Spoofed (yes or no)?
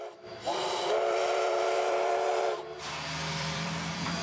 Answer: yes